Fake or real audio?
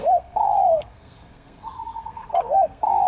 fake